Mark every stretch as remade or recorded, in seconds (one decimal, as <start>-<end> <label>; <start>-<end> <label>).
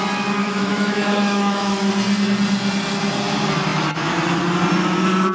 0.0-0.4 recorded; 0.4-1.9 remade; 1.9-5.3 recorded